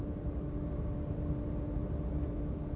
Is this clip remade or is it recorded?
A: recorded